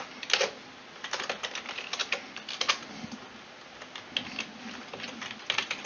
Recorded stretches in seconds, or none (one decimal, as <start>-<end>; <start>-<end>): 0.0-5.9